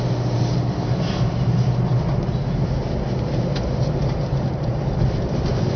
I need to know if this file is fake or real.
real